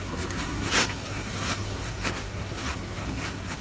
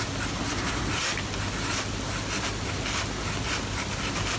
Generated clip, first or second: first